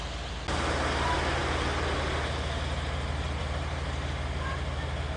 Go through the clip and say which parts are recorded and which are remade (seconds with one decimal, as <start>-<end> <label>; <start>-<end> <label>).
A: 0.0-5.2 recorded